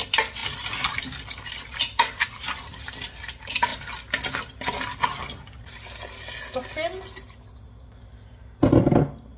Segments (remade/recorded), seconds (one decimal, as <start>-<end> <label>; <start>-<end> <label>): 0.0-9.4 recorded

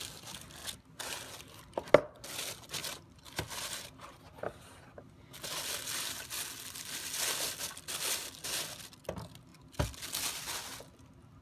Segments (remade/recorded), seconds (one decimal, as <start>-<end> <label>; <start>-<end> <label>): 0.0-11.4 recorded

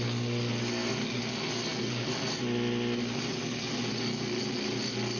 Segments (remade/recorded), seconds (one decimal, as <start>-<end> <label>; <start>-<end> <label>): 0.0-5.2 recorded

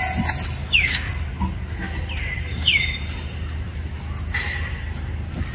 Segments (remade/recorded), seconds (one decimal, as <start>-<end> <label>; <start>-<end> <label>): 0.0-0.6 recorded; 0.6-1.1 remade; 1.1-2.5 recorded; 2.5-3.0 remade; 3.0-5.5 recorded

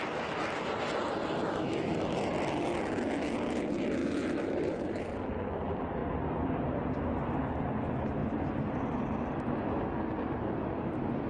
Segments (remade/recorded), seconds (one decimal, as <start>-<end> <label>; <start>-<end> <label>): 0.0-1.4 recorded; 1.4-2.3 remade; 2.3-4.0 recorded; 4.0-5.0 remade; 5.0-11.3 recorded

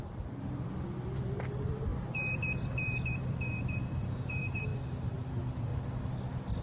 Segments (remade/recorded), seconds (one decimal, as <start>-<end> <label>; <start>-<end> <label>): 0.0-4.7 remade; 4.7-5.3 recorded; 5.3-5.7 remade; 5.7-6.6 recorded